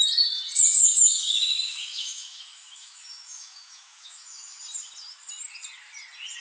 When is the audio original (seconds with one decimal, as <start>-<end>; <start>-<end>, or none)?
0.0-0.8; 4.6-6.4